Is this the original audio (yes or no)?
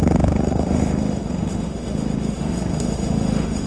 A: no